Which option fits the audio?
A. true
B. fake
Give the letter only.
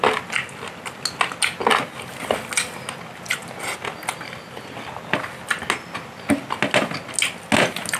A